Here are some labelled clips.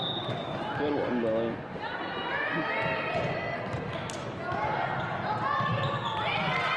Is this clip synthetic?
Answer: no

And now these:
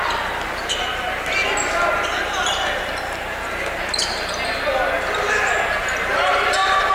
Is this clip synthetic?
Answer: no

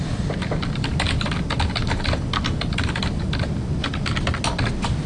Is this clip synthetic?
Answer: no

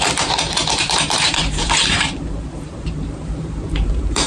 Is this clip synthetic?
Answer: yes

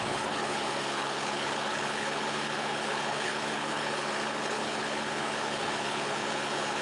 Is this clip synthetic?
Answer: yes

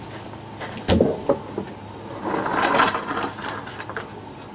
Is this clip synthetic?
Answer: no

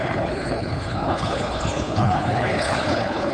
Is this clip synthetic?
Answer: yes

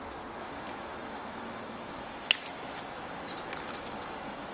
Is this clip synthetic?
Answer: yes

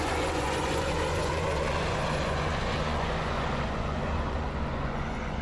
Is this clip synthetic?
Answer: yes